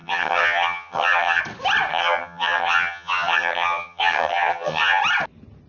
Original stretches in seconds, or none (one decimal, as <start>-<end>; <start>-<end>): 1.4-1.9; 5.0-5.7